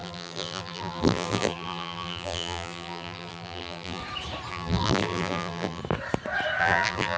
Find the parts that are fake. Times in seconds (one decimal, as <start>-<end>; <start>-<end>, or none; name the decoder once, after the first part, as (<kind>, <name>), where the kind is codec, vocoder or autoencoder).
0.0-4.0 (vocoder, BigVGAN v2); 4.5-5.8; 6.6-7.2